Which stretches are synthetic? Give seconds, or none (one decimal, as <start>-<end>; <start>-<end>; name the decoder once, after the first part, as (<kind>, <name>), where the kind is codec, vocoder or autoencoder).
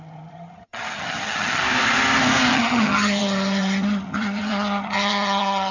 0.0-1.6 (vocoder, HiFi-GAN); 2.5-5.7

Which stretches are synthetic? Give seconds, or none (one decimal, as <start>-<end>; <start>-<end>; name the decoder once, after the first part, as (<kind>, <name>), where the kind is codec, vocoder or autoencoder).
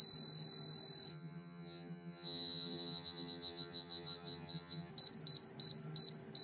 1.1-4.9 (vocoder, HiFi-GAN)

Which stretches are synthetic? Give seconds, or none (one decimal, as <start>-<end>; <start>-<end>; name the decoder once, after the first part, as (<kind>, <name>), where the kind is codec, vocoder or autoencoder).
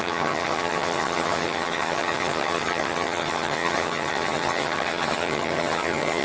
0.0-6.2 (vocoder, HiFi-GAN)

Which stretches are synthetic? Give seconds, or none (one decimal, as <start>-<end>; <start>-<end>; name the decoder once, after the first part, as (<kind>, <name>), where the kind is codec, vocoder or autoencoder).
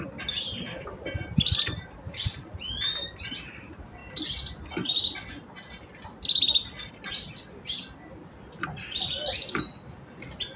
none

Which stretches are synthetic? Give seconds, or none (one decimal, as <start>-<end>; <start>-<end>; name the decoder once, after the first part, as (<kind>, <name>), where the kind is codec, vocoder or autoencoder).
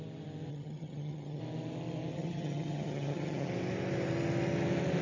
0.5-1.4 (vocoder, HiFi-GAN); 2.1-3.5